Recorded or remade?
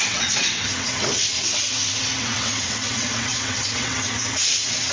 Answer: remade